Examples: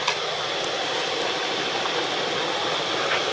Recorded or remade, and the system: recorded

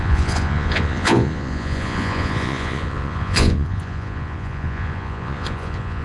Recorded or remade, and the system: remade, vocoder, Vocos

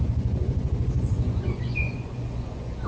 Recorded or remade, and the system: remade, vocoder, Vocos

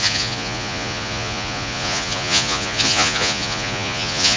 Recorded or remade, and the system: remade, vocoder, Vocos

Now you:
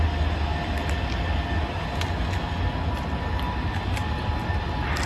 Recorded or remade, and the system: recorded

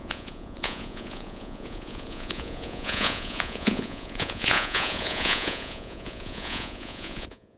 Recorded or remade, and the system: remade, vocoder, Vocos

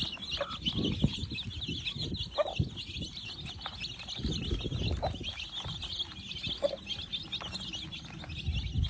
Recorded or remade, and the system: recorded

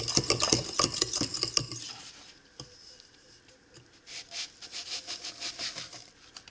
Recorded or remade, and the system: recorded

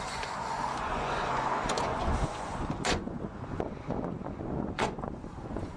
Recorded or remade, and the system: remade, vocoder, Vocos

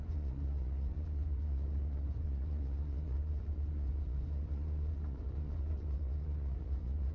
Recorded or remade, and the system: remade, vocoder, Vocos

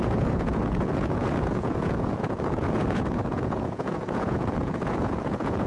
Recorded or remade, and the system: remade, vocoder, Vocos